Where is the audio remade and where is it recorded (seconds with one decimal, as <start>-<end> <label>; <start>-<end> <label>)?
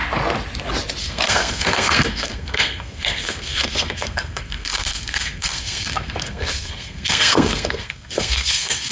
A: 0.0-1.0 recorded; 1.0-8.9 remade